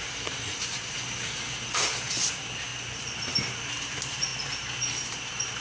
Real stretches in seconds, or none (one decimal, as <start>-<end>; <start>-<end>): 2.7-3.6; 4.3-5.6